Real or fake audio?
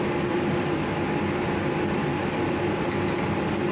real